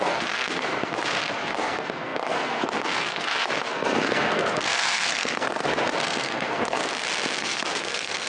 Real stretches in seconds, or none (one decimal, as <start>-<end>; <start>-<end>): 6.8-7.4